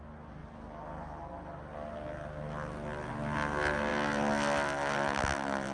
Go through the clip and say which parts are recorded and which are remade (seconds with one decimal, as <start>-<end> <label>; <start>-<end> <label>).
0.0-5.7 recorded